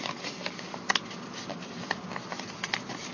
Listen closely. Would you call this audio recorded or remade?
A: recorded